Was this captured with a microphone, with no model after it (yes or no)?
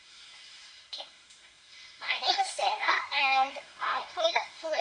no